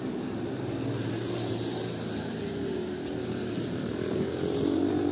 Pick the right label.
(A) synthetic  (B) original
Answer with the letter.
A